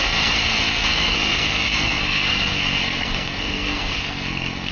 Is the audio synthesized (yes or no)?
yes